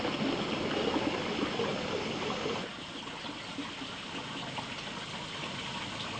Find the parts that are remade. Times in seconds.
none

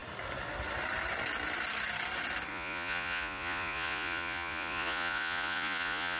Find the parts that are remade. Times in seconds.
2.5-6.2 (vocoder, Vocos)

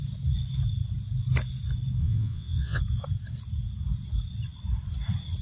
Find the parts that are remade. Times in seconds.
2.0-2.8 (vocoder, WaveNeXt)

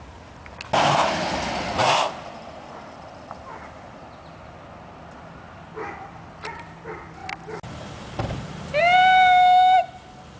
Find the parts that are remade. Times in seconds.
none

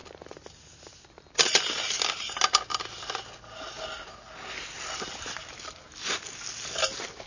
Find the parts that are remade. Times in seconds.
none

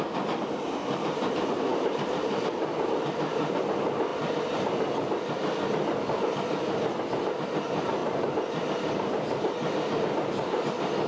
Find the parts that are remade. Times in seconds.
1.7-2.9 (vocoder, BigVGAN v2); 8.0-9.9

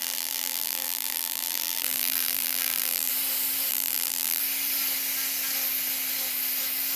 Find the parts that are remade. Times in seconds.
0.0-3.1 (vocoder, BigVGAN v2); 3.7-4.4

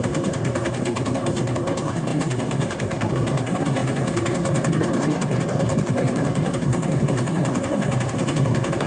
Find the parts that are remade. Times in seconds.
0.0-8.9 (codec, SNAC)